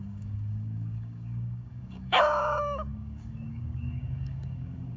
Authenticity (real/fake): fake